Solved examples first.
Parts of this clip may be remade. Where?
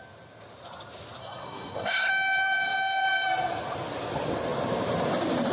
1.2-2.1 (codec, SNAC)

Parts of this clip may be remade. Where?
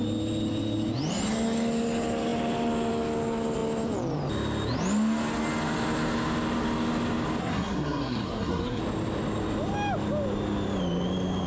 7.4-8.8 (codec, SNAC)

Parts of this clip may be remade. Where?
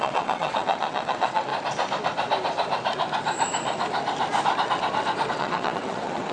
0.0-1.5 (vocoder, WaveNeXt); 5.3-6.3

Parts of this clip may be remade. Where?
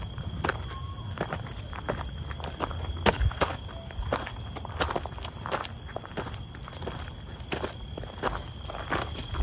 3.1-3.6 (codec, DAC)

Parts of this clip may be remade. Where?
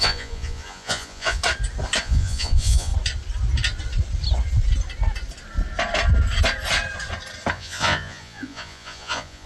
0.0-1.4 (vocoder, Vocos); 2.0-2.9; 7.5-9.5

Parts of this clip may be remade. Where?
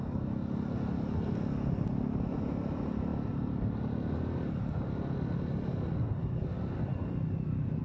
none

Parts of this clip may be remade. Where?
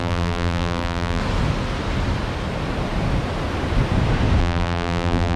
0.0-1.2 (vocoder, BigVGAN v2); 4.4-5.4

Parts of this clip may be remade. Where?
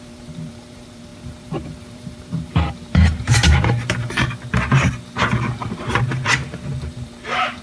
0.0-5.9 (vocoder, BigVGAN v2); 6.9-7.6